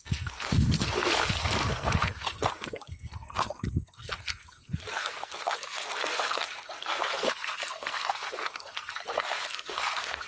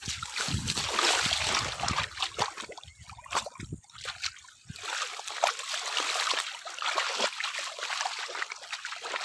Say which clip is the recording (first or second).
second